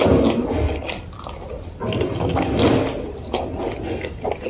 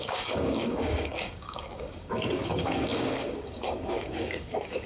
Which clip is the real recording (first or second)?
first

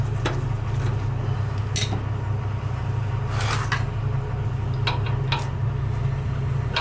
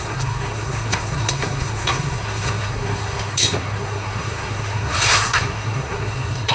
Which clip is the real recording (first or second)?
first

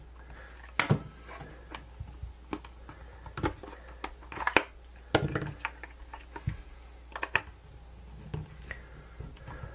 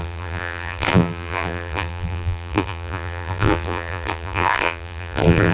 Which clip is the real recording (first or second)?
first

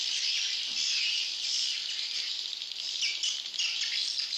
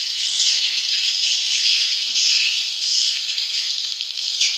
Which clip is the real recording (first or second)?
first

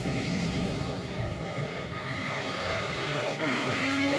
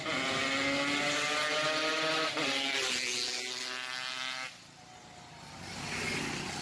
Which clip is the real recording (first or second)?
second